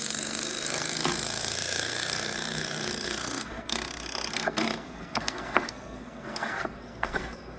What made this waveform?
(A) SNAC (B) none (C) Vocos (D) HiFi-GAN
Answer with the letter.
A